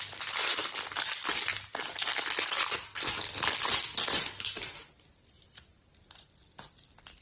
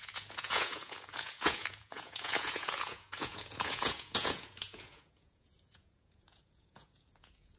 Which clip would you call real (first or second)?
first